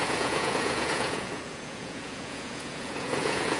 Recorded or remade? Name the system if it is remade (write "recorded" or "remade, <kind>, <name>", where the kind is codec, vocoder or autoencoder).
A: remade, vocoder, Vocos